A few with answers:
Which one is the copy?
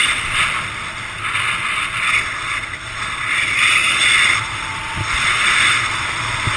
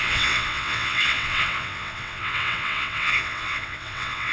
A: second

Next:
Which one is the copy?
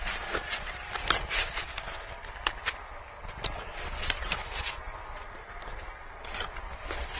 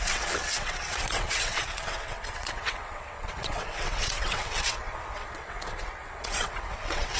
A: second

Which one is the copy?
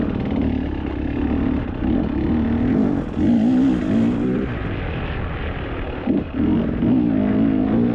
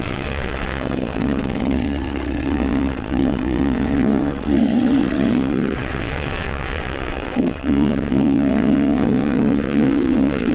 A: second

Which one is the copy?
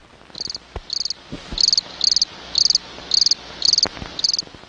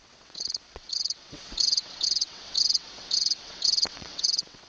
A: second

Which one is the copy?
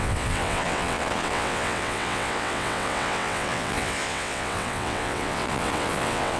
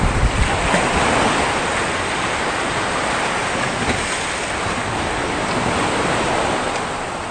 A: first